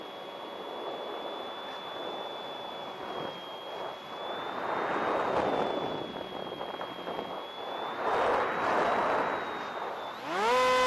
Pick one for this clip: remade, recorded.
recorded